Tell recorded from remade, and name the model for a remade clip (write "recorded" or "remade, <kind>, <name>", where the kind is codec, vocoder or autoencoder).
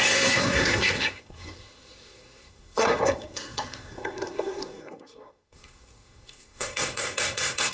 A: remade, codec, SNAC